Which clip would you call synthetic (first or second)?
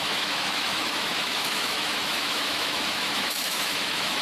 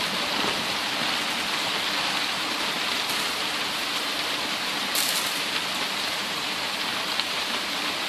first